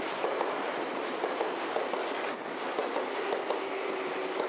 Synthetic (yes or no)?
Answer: no